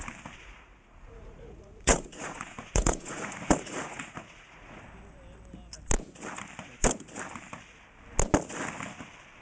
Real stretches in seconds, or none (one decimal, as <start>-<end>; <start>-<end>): 0.0-0.4; 4.8-9.4